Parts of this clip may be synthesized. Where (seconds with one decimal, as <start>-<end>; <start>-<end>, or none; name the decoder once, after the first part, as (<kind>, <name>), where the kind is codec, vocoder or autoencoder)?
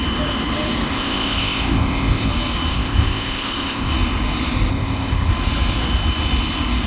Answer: 0.9-2.3 (codec, ZipCodec); 2.7-3.9; 4.7-5.3